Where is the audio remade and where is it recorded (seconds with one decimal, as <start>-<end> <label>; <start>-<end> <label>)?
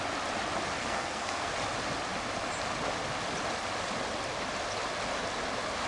0.0-0.8 recorded; 0.8-1.5 remade; 1.5-5.9 recorded